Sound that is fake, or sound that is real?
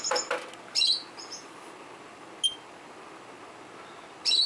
real